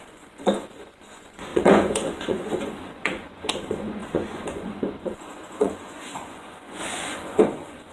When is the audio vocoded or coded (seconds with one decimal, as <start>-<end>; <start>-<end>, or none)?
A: 0.0-7.9